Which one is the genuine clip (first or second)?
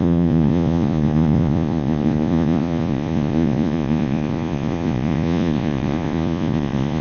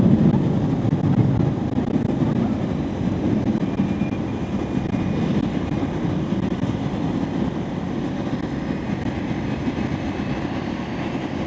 second